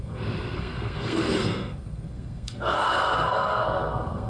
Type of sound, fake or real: fake